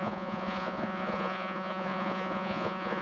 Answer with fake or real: fake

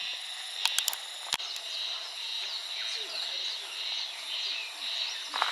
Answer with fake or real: real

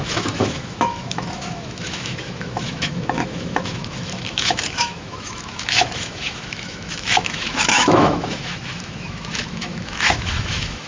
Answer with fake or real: fake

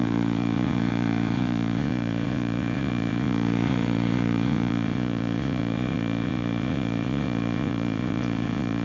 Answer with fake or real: fake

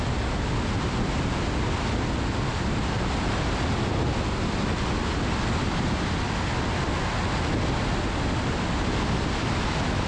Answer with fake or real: real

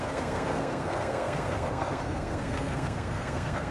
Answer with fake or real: fake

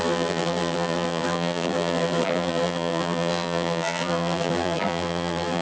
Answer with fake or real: fake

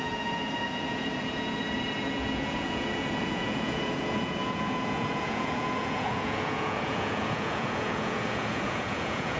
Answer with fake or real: fake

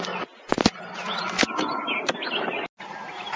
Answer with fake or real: real